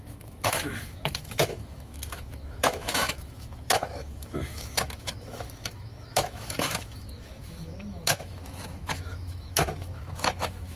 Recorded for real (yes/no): no